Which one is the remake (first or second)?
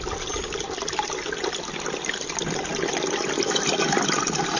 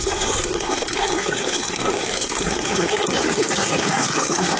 second